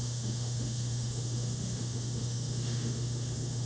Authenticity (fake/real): fake